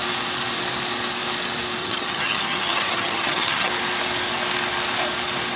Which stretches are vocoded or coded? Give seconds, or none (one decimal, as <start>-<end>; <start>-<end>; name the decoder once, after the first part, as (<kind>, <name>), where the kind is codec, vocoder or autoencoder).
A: 1.8-3.7 (vocoder, HiFi-GAN)